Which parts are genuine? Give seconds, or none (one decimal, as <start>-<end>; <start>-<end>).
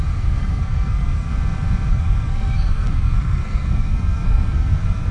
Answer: 1.3-1.9